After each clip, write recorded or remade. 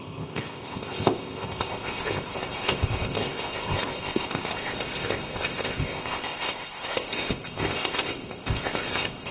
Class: remade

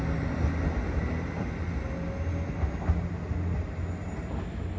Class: recorded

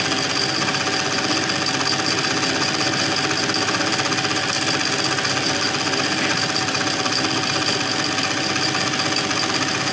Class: recorded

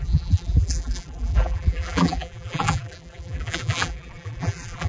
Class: remade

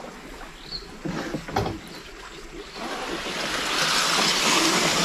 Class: recorded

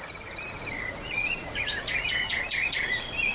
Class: remade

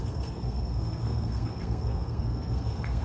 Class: remade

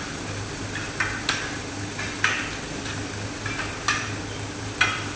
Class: recorded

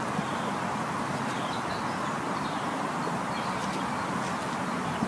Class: recorded